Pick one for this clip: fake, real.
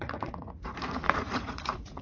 fake